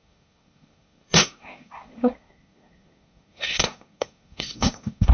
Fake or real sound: fake